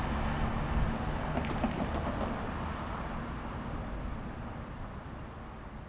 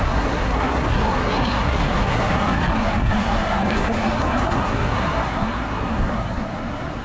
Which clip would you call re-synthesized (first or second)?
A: second